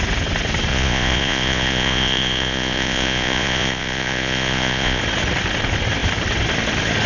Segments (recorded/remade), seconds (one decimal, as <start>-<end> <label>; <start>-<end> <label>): 0.0-0.7 recorded; 0.7-5.0 remade; 5.0-7.1 recorded